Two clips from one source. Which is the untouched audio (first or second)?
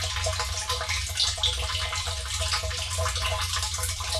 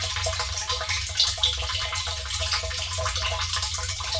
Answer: first